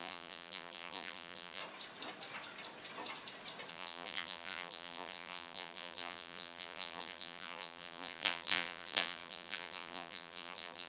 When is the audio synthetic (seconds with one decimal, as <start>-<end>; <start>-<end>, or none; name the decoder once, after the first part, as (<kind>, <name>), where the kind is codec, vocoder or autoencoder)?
0.0-1.6 (vocoder, BigVGAN v2); 3.7-10.9